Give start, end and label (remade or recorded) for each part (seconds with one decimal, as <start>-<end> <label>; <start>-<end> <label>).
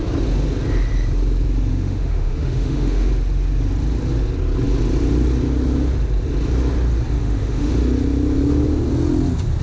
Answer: 0.0-1.7 recorded; 1.7-3.1 remade; 3.1-7.2 recorded; 7.2-7.7 remade; 7.7-9.6 recorded